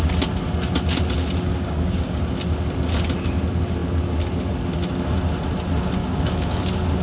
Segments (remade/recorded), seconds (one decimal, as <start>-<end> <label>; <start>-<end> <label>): 0.0-1.5 recorded; 1.5-2.2 remade; 2.2-6.0 recorded; 6.0-6.6 remade; 6.6-7.0 recorded